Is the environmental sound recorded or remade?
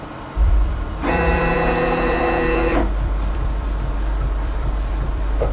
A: remade